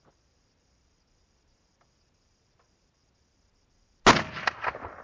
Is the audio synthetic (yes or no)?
no